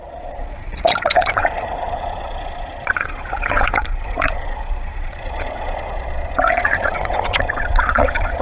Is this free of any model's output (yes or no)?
no